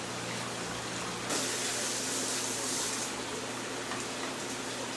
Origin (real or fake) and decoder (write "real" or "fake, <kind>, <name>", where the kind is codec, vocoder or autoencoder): real